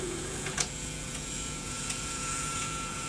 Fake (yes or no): yes